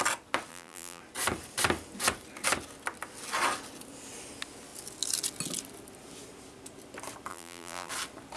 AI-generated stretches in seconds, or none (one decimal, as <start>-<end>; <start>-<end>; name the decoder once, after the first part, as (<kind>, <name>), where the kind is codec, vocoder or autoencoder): 0.5-1.0 (vocoder, BigVGAN v2); 7.3-7.9